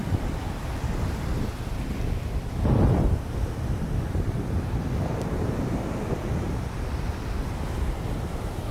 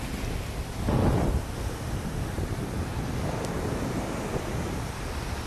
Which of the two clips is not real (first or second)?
first